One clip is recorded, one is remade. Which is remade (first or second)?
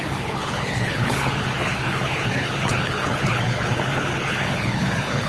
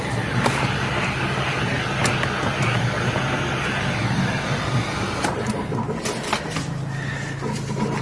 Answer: first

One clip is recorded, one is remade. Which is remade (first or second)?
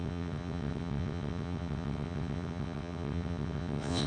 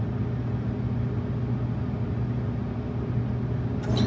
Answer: first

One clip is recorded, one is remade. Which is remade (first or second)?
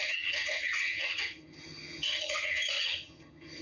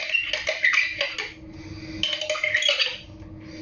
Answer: first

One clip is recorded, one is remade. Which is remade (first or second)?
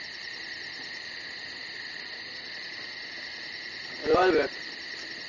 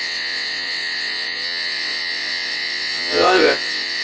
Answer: second